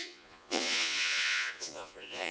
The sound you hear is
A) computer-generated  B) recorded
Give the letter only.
A